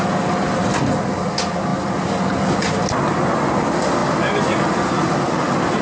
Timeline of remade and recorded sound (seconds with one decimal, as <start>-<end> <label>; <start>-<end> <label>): 0.0-5.8 recorded